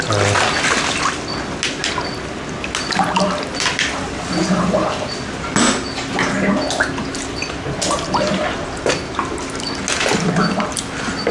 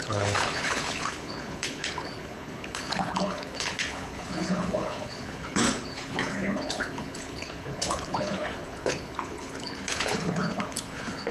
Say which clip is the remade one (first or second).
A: second